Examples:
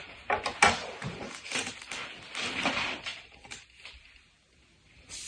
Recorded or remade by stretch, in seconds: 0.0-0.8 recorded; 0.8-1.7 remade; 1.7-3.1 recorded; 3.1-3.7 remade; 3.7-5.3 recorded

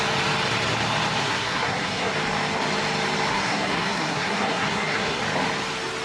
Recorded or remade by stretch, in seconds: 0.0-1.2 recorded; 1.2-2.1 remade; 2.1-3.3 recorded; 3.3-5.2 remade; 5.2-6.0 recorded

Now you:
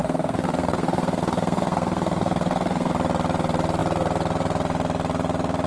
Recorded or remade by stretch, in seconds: 0.0-2.9 remade; 2.9-5.7 recorded

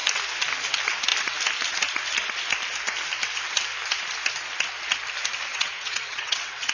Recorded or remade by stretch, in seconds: 0.0-5.5 recorded; 5.5-6.7 remade

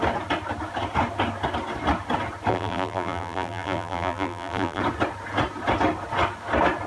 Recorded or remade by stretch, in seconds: 0.0-2.5 recorded; 2.5-4.8 remade; 4.8-6.9 recorded

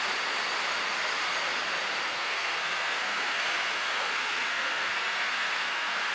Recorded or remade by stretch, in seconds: 0.0-2.1 recorded; 2.1-6.1 remade